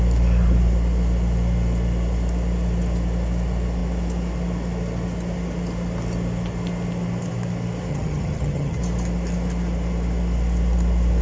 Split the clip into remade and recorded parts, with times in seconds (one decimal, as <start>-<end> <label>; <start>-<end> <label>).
0.0-7.9 recorded; 7.9-8.8 remade; 8.8-11.2 recorded